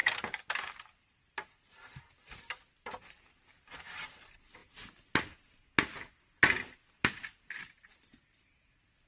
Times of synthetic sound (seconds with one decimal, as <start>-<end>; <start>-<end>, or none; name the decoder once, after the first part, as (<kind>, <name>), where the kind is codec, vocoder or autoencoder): none